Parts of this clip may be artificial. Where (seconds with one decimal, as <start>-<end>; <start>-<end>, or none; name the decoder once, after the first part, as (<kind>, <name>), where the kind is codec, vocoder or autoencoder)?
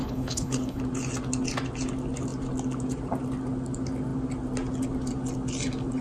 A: 0.0-0.8 (codec, HILCodec)